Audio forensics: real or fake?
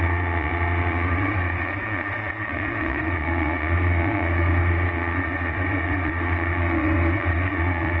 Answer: fake